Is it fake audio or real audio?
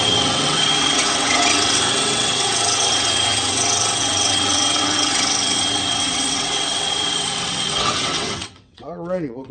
fake